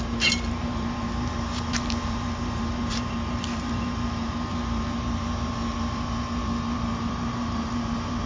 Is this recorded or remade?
remade